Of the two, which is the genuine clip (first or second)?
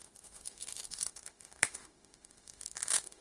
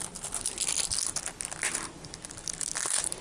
second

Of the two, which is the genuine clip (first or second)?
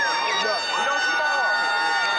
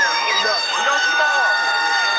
first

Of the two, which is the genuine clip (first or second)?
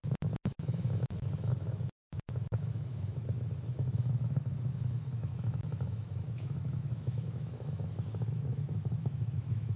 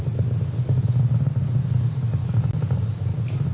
second